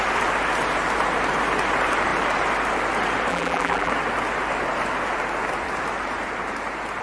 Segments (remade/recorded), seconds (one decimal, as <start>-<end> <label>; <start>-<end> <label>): 0.0-3.3 recorded; 3.3-3.9 remade; 3.9-7.0 recorded